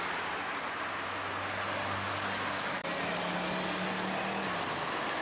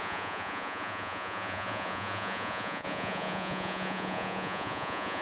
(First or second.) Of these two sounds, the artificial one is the second